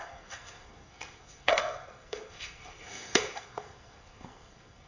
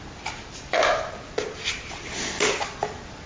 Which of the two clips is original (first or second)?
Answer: second